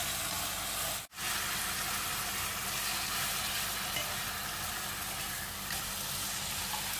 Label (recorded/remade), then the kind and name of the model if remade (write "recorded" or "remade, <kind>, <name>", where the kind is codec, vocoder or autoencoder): recorded